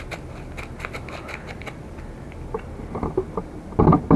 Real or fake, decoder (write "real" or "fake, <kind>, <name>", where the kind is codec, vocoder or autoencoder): real